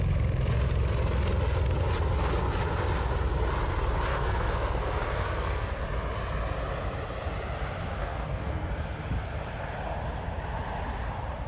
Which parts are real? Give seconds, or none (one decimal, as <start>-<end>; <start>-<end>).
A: 0.0-4.1; 5.8-8.0; 8.7-11.5